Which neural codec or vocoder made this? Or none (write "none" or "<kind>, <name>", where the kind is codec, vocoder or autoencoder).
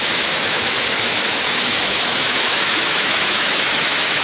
autoencoder, DAC-VAE